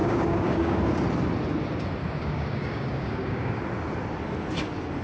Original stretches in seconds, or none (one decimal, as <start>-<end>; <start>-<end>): 0.8-2.0; 3.6-5.0